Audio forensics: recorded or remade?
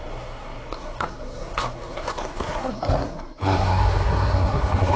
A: remade